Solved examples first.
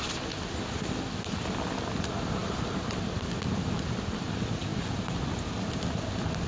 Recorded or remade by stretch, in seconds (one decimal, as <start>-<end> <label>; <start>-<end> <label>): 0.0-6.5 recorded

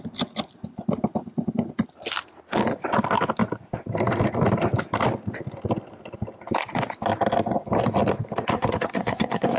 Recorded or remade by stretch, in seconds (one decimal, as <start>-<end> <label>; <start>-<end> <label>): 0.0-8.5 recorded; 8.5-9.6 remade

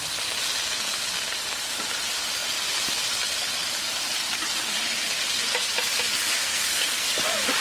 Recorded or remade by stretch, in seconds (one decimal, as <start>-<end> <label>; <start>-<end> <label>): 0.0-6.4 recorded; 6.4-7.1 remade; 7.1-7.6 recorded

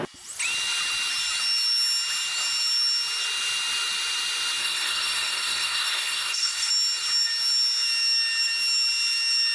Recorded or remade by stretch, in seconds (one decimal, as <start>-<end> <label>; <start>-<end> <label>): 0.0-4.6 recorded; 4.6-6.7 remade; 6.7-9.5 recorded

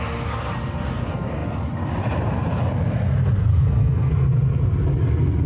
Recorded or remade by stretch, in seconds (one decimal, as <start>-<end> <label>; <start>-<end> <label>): 0.0-3.5 recorded; 3.5-4.1 remade; 4.1-5.5 recorded

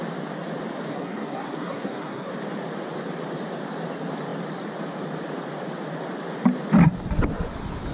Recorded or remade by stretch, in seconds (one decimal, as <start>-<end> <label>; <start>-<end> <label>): 0.0-0.9 recorded; 0.9-2.3 remade; 2.3-7.9 recorded

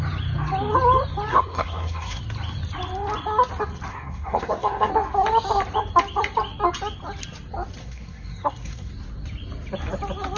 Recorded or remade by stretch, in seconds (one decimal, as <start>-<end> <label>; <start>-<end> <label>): 0.0-1.3 recorded; 1.3-2.2 remade; 2.2-3.9 recorded; 3.9-4.9 remade; 4.9-7.8 recorded; 7.8-8.9 remade; 8.9-10.4 recorded

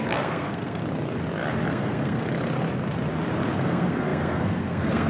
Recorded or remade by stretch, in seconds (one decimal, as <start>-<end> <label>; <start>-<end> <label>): 0.0-0.8 remade; 0.8-1.7 recorded; 1.7-2.2 remade; 2.2-3.5 recorded; 3.5-5.1 remade